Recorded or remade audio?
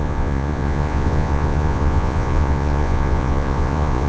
remade